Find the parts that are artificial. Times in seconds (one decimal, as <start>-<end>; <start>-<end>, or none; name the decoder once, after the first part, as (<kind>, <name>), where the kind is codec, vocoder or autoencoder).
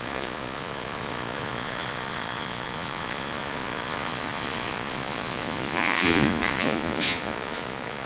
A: 0.0-8.1 (vocoder, Vocos)